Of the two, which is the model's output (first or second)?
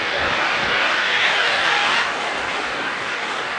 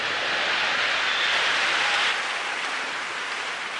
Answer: first